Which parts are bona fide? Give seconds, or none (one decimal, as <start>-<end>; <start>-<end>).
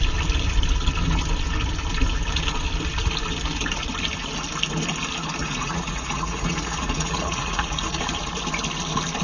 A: 0.0-5.4; 8.0-9.2